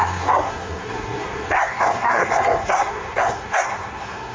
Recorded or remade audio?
remade